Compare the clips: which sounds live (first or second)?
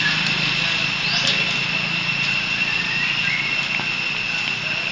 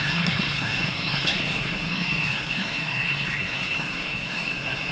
first